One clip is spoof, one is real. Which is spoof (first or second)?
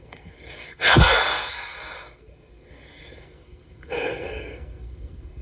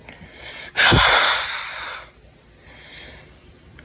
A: first